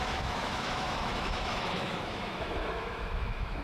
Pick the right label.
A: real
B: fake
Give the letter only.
B